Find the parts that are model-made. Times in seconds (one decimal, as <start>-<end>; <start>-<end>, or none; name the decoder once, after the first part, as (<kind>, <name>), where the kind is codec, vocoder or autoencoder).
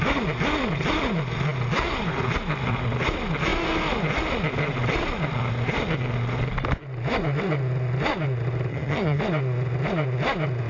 8.7-9.2 (vocoder, HiFi-GAN)